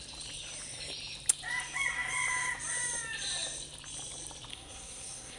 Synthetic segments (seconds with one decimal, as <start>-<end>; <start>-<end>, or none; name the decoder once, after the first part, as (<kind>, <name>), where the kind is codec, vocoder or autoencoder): 4.5-5.4 (codec, SNAC)